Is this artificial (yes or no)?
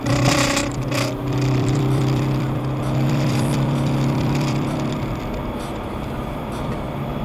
yes